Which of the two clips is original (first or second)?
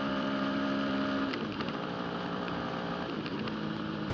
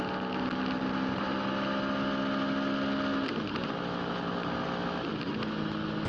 second